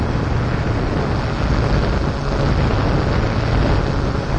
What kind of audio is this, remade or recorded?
recorded